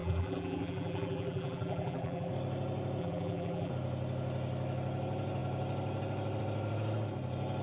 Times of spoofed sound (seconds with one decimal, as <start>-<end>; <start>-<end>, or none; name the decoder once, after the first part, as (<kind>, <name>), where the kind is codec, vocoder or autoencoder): 0.0-2.3 (vocoder, BigVGAN v2); 3.0-3.7